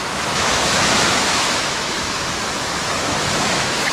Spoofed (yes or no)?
yes